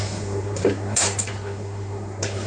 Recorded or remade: remade